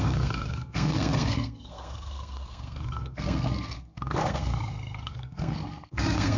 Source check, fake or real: fake